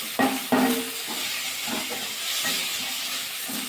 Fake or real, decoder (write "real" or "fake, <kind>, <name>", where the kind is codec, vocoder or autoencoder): real